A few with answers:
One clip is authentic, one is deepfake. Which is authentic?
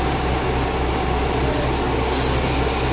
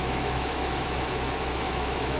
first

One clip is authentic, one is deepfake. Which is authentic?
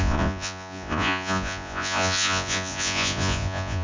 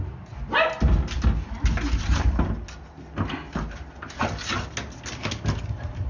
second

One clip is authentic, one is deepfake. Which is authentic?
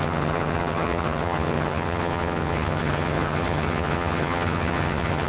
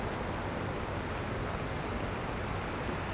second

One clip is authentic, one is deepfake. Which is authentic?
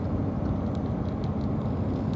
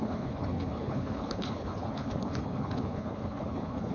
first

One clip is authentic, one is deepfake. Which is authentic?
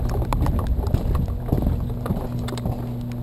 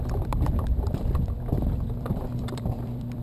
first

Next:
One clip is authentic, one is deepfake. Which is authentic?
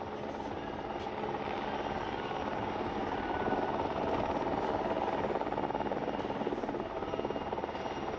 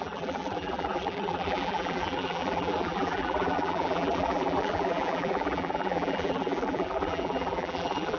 first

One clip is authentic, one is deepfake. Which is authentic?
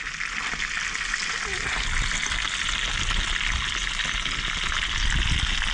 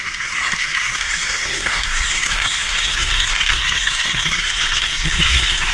first